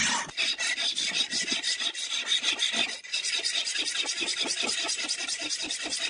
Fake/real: real